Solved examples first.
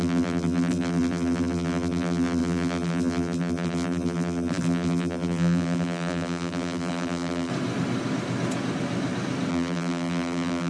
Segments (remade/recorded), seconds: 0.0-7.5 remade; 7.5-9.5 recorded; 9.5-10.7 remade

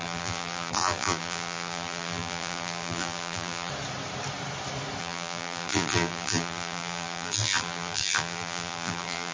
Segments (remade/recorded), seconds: 0.0-3.7 remade; 3.7-5.0 recorded; 5.0-9.3 remade

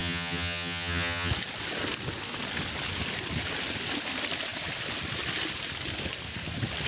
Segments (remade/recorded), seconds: 0.0-1.3 remade; 1.3-6.9 recorded